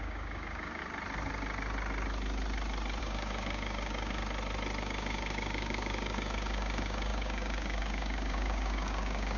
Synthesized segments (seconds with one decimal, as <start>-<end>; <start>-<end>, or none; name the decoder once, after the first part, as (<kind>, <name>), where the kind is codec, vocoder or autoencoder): 0.0-0.8 (codec, DAC); 3.0-4.2; 4.8-9.4